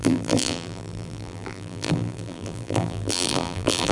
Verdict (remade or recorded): remade